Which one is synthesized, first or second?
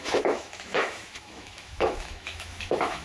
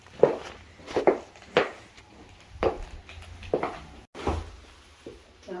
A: first